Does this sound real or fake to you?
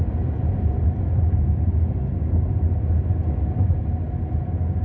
real